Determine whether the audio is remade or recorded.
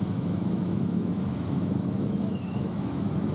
remade